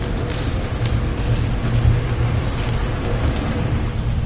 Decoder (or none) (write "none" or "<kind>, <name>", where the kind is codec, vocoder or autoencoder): none